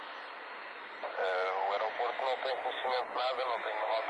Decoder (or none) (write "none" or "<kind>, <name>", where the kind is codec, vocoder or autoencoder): none